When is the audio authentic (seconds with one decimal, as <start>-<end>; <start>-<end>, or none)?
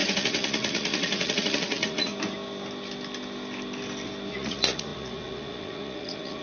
2.1-4.3